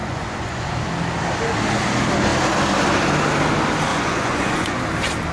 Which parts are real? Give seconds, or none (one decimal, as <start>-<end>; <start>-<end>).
0.7-3.9; 4.8-5.3